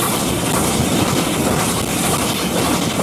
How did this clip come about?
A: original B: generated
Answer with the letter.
A